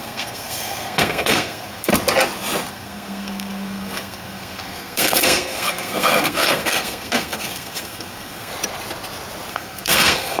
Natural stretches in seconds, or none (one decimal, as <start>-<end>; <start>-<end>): 1.9-2.7; 8.5-9.5